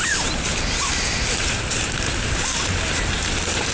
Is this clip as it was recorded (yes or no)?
yes